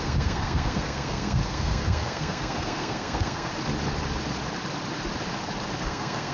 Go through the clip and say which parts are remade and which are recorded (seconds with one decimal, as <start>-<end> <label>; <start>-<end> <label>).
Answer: 0.0-3.5 remade; 3.5-5.8 recorded; 5.8-6.3 remade